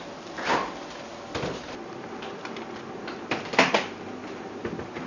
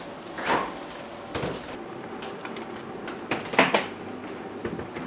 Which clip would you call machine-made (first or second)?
second